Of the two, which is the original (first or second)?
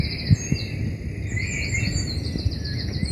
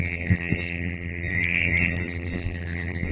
first